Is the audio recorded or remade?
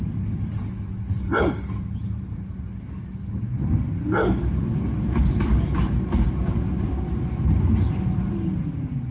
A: recorded